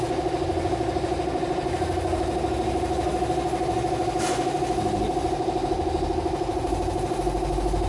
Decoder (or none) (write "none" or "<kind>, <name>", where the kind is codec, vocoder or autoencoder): none